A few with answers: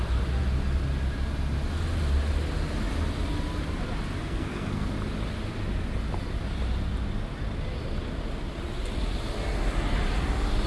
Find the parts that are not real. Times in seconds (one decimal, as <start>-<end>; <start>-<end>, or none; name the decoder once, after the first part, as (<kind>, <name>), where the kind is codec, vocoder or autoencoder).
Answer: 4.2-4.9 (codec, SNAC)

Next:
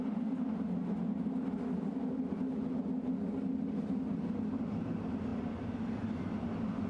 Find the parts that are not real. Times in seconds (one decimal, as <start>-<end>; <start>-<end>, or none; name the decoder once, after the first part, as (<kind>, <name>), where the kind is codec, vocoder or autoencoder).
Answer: none

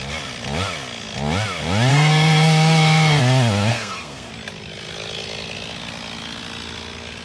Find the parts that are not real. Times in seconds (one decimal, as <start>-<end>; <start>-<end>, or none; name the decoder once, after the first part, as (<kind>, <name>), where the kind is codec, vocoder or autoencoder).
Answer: 1.9-3.2 (codec, SNAC); 3.7-4.3